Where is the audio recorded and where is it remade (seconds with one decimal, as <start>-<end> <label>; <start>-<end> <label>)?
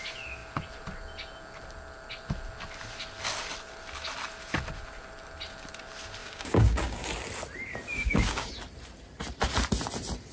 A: 0.0-6.2 recorded; 6.2-7.0 remade; 7.0-7.9 recorded; 7.9-8.5 remade; 8.5-10.3 recorded